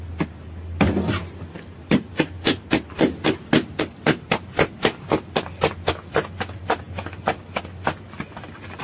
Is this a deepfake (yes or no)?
no